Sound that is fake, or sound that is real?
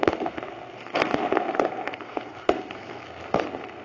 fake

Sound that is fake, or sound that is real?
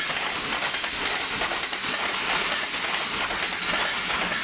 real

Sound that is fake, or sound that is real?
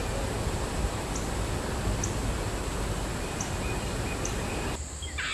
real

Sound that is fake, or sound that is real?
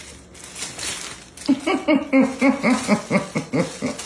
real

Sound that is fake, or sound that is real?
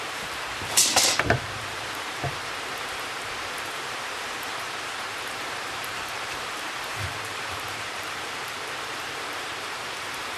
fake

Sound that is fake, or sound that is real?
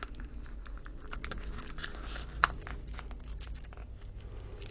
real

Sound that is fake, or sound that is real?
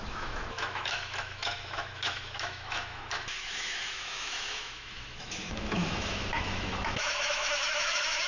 fake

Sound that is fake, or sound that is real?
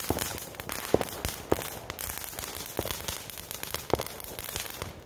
real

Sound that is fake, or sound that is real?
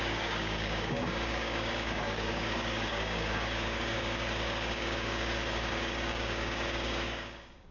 fake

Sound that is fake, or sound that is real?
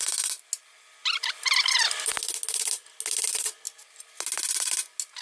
real